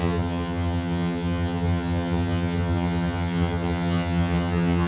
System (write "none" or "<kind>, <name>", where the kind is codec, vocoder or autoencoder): vocoder, HiFi-GAN